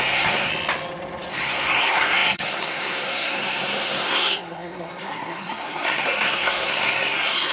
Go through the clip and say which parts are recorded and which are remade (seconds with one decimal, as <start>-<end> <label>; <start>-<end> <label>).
0.0-0.5 remade; 0.5-1.3 recorded; 1.3-7.5 remade